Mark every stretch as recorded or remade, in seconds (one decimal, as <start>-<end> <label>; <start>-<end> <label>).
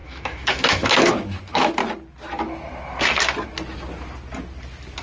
0.0-1.8 remade; 1.8-5.0 recorded